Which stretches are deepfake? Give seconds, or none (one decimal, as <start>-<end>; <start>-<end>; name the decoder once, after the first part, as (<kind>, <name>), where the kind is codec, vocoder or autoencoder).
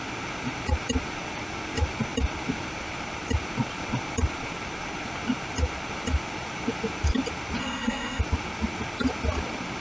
7.6-8.2 (codec, SNAC)